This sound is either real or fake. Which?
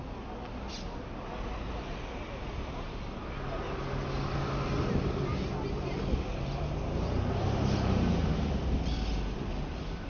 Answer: real